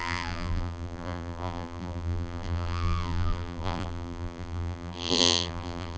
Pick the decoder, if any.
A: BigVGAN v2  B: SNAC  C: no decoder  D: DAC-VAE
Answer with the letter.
A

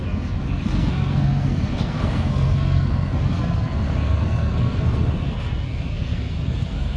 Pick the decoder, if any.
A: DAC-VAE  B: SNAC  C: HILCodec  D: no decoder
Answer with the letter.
B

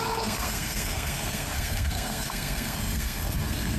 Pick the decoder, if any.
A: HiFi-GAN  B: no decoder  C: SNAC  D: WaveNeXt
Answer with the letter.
C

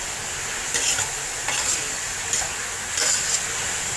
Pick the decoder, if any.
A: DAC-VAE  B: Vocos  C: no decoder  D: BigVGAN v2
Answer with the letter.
C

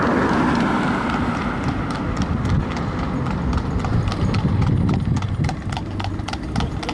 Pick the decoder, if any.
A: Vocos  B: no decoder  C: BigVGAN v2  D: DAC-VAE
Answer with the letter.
B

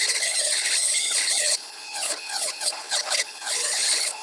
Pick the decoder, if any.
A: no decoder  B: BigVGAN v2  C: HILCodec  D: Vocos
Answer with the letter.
C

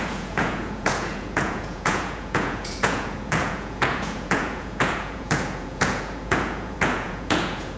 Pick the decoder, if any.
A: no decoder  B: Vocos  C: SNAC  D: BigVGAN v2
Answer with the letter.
B